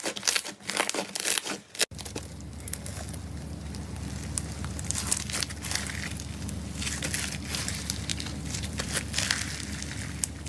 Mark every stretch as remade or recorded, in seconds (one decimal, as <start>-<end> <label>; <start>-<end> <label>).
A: 0.0-8.1 recorded; 8.1-8.9 remade; 8.9-10.5 recorded